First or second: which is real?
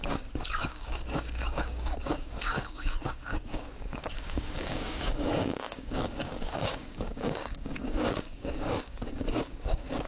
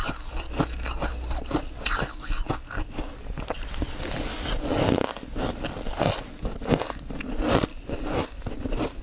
second